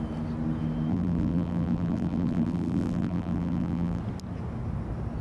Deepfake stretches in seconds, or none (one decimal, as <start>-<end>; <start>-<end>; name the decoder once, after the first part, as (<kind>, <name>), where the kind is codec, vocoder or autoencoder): 0.9-4.0 (vocoder, BigVGAN v2)